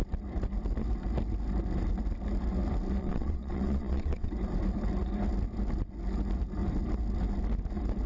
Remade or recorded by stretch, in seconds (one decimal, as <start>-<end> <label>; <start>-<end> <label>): 0.0-3.0 recorded; 3.0-4.3 remade; 4.3-8.1 recorded